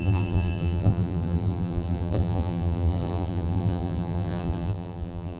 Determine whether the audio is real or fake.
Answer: fake